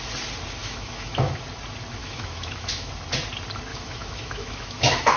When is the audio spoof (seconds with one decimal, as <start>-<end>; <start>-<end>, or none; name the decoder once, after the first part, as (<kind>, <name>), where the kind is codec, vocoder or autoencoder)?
0.6-1.4 (autoencoder, DAC-VAE); 2.0-2.9; 3.7-5.2